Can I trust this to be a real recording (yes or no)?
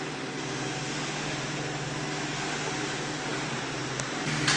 yes